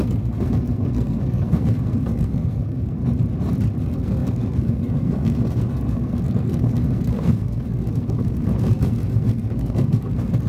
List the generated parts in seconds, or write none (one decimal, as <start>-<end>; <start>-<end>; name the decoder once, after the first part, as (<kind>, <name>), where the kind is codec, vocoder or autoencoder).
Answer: 0.0-3.0 (codec, SNAC); 3.8-10.5